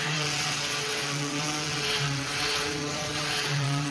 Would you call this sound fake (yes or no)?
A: yes